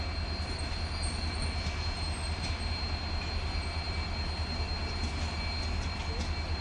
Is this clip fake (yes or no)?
no